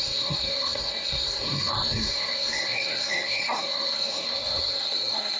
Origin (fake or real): fake